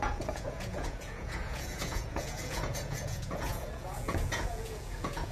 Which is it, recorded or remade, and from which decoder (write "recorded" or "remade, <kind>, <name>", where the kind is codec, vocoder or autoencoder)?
remade, vocoder, Vocos